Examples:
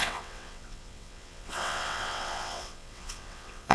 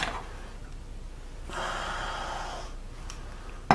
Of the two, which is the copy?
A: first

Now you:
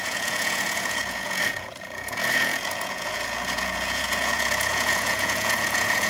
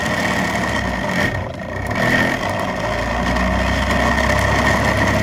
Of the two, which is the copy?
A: first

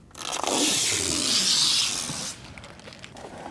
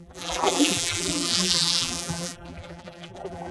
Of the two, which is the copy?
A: second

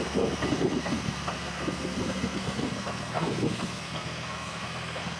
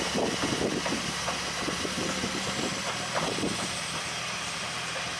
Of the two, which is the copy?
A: first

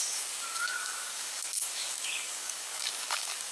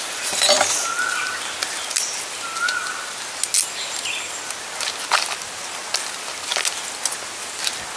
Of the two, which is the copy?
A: first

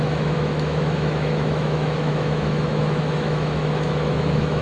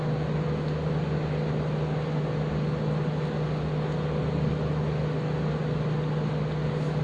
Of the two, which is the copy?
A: first